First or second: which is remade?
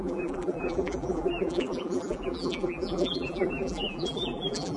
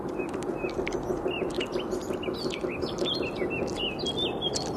first